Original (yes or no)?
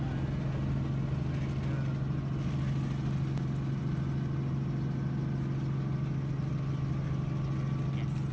yes